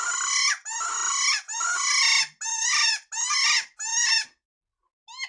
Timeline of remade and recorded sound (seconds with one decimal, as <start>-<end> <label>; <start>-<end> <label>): 0.0-5.3 recorded